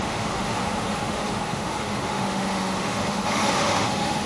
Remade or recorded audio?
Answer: remade